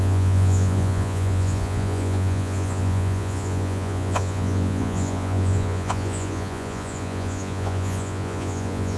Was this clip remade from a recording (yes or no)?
yes